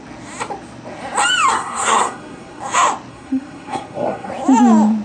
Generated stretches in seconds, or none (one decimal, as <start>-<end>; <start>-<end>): 1.5-2.6; 3.1-4.3